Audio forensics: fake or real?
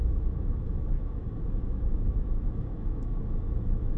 fake